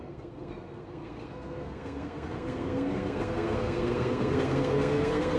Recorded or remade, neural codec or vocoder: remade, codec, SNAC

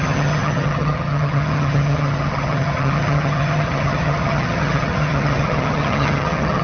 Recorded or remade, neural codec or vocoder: remade, vocoder, HiFi-GAN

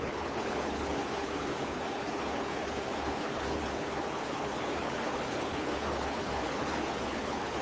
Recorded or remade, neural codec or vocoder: remade, codec, HILCodec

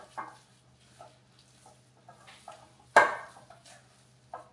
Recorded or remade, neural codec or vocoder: recorded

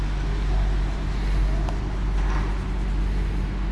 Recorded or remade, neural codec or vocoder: recorded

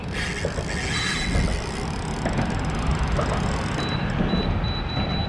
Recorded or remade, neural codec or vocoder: recorded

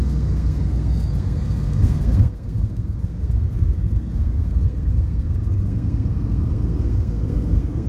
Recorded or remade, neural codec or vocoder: remade, codec, SNAC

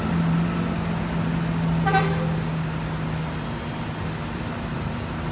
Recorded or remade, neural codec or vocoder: recorded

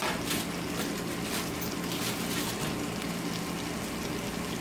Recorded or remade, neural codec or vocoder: recorded